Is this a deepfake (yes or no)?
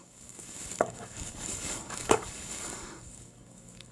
yes